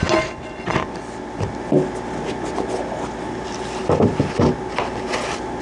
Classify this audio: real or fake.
real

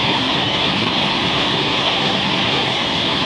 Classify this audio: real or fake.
fake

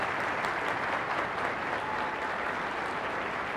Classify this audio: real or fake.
real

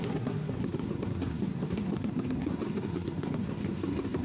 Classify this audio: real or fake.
fake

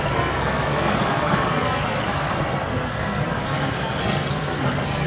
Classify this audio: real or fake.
fake